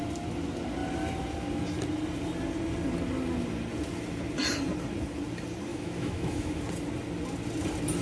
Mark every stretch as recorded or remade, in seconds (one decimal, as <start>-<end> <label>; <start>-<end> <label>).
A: 0.0-5.7 recorded; 5.7-6.6 remade; 6.6-8.0 recorded